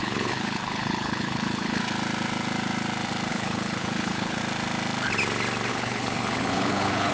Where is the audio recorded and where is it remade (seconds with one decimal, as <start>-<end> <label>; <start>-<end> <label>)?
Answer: 0.0-1.8 remade; 1.8-3.3 recorded; 3.3-4.4 remade; 4.4-5.7 recorded; 5.7-7.1 remade

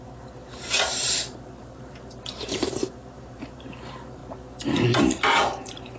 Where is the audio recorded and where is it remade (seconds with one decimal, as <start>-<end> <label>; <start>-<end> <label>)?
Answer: 0.0-4.2 remade; 4.2-5.0 recorded; 5.0-6.0 remade

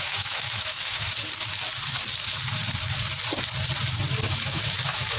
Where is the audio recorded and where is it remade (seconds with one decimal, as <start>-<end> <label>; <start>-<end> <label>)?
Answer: 0.0-1.2 remade; 1.2-4.3 recorded; 4.3-5.2 remade

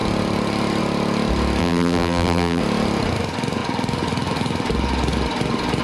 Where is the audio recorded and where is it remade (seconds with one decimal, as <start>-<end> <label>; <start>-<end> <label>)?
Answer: 0.0-1.6 recorded; 1.6-2.6 remade; 2.6-5.8 recorded